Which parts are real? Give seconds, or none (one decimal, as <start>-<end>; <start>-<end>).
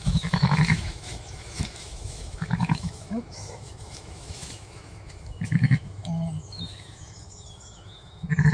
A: none